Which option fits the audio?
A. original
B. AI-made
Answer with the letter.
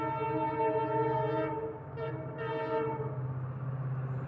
A